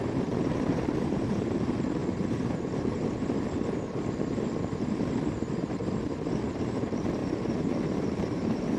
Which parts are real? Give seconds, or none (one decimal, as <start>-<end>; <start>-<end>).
5.8-6.5; 7.2-8.0